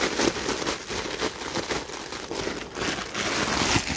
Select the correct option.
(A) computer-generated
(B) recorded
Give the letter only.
B